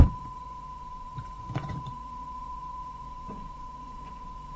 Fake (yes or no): yes